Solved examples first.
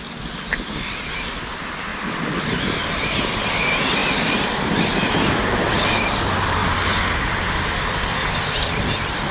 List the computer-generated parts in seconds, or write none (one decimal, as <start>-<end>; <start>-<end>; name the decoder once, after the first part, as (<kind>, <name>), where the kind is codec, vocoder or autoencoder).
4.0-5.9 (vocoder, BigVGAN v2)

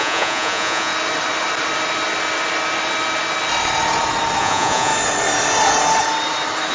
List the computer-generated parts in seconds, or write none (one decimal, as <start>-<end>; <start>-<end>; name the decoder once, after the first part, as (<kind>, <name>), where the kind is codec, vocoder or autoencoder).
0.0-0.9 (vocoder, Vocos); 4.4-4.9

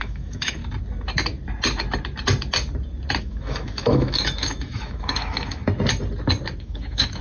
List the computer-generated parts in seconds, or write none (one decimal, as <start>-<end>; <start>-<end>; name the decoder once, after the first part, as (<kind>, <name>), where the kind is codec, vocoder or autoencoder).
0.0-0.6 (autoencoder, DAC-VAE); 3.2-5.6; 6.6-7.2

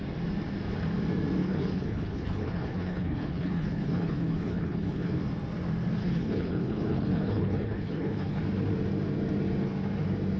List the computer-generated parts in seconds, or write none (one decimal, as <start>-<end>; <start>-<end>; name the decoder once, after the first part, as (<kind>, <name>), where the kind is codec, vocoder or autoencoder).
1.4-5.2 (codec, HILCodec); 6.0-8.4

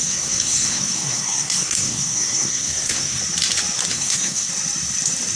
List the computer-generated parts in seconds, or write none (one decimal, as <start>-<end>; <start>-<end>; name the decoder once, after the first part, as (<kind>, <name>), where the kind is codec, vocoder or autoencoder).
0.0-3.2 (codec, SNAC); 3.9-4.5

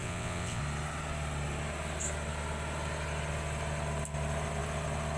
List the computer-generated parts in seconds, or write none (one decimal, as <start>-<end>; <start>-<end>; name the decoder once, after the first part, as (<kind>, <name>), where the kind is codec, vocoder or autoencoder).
0.0-0.6 (vocoder, WaveNeXt)

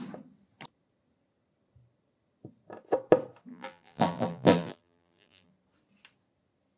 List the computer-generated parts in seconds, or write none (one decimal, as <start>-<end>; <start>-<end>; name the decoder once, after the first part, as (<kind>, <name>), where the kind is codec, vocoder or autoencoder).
3.5-5.5 (vocoder, BigVGAN v2)

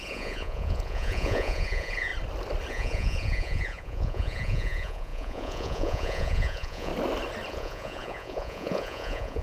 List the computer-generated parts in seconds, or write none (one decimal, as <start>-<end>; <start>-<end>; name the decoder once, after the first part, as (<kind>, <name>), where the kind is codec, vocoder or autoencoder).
0.0-2.1 (vocoder, Vocos); 2.7-6.9; 7.5-9.4